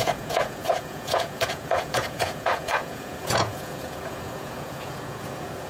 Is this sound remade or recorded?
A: remade